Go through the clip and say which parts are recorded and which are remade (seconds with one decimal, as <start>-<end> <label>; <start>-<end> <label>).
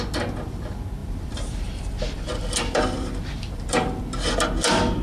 0.0-1.0 recorded; 1.0-4.0 remade; 4.0-5.0 recorded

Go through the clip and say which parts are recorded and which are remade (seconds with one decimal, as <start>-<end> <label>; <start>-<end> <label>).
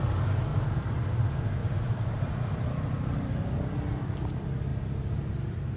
0.0-0.5 recorded; 0.5-1.1 remade; 1.1-1.6 recorded; 1.6-3.6 remade; 3.6-5.8 recorded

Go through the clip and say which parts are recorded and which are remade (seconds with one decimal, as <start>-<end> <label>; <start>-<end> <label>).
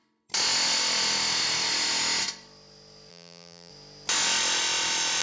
0.0-3.1 recorded; 3.1-3.7 remade; 3.7-5.2 recorded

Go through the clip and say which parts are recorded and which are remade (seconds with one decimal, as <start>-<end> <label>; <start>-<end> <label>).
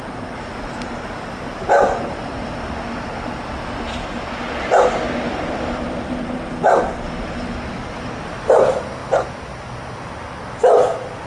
0.0-11.3 recorded